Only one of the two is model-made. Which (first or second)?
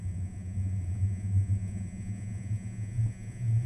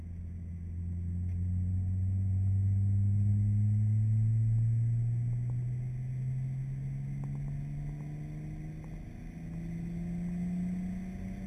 first